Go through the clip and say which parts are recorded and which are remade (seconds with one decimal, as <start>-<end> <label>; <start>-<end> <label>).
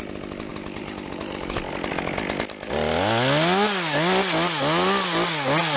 0.0-5.8 recorded